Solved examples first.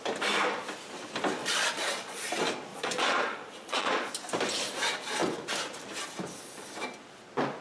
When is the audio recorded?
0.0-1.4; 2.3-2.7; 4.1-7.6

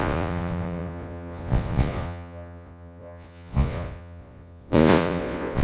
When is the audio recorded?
none

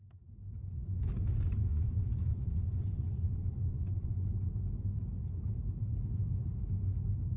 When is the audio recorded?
0.0-0.6; 1.1-1.7; 4.1-7.4

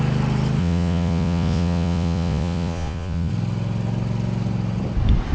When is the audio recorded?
0.0-0.6; 3.3-5.3

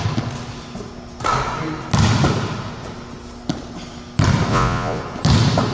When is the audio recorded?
0.0-4.5; 5.0-5.7

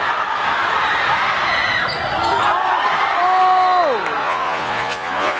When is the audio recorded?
0.0-4.2